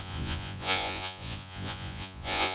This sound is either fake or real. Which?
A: fake